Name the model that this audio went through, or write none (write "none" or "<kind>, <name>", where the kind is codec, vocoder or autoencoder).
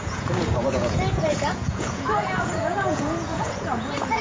vocoder, Vocos